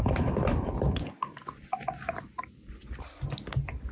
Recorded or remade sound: recorded